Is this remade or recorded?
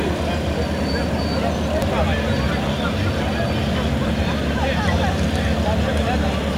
recorded